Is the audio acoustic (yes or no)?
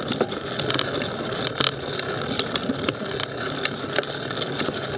yes